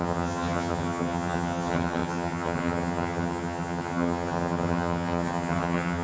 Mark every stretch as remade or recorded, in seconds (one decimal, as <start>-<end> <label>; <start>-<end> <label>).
0.0-6.0 remade